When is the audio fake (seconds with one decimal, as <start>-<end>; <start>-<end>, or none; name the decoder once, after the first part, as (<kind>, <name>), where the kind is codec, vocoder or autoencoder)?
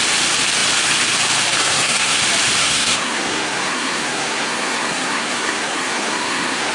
1.6-2.2 (codec, SNAC); 2.6-6.7